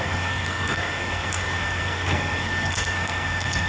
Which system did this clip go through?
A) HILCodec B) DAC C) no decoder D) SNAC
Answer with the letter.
D